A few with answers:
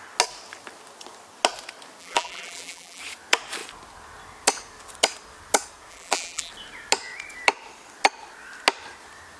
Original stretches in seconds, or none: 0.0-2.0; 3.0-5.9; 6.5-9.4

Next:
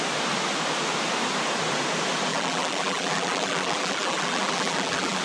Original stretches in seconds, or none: 0.0-2.3

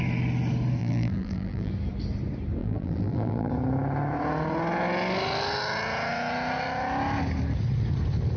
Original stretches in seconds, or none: 0.0-0.8; 1.7-2.6; 3.5-8.4

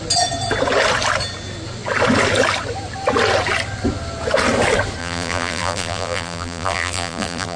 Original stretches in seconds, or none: 0.0-5.0

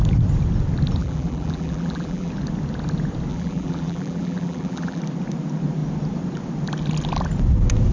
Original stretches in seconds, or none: 0.0-1.0; 2.3-3.3; 5.0-7.9

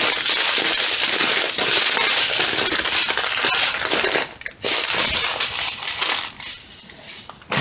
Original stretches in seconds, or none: 0.0-7.6

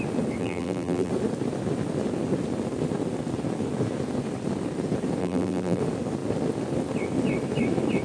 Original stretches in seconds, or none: 0.0-0.4; 1.1-5.2; 5.8-8.0

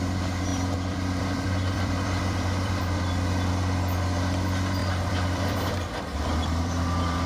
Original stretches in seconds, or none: 0.0-0.5; 3.5-4.8